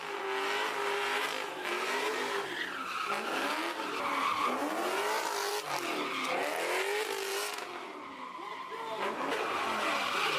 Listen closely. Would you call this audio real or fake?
real